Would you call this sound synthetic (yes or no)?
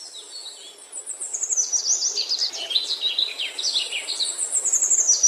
no